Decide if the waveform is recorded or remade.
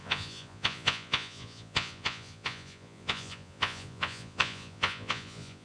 remade